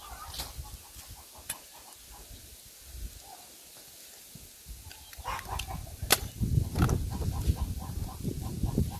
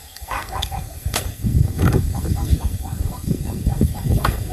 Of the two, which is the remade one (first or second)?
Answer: second